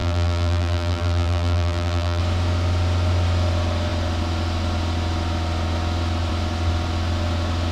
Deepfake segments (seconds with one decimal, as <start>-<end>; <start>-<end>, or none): 0.0-2.2